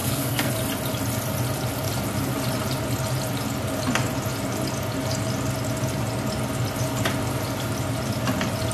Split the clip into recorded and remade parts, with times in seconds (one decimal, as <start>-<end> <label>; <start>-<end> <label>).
0.0-0.5 remade; 0.5-8.7 recorded